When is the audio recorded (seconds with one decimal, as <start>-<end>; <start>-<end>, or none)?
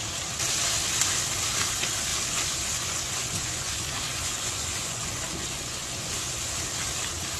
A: 0.0-2.1; 6.5-7.4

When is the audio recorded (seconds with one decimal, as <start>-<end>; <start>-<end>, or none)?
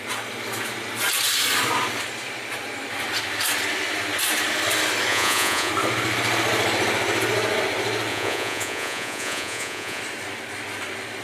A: 0.0-5.1; 5.7-8.1; 10.0-11.2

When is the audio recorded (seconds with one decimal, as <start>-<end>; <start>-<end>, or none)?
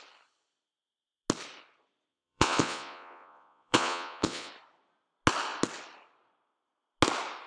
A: 0.0-2.1; 4.5-7.5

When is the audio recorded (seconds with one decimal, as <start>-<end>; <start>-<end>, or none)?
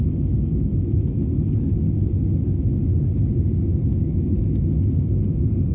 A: 1.2-4.0; 4.4-5.7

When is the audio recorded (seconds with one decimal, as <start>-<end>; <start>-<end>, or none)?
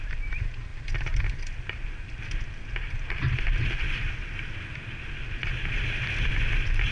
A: 0.0-6.9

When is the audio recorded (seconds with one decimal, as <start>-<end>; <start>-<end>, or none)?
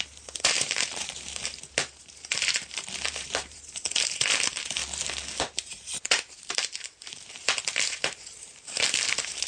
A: 4.8-5.7